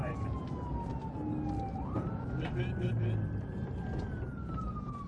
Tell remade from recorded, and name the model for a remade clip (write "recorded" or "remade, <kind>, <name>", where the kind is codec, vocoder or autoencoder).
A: recorded